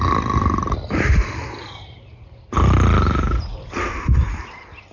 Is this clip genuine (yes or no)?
yes